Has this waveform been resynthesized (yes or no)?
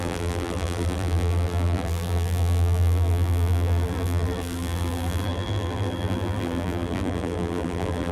yes